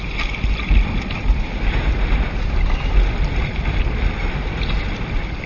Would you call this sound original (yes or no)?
yes